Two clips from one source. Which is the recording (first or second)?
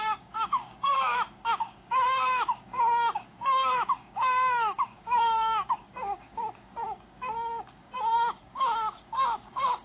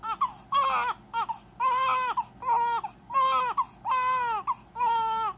second